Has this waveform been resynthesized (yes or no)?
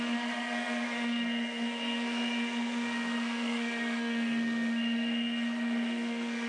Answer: yes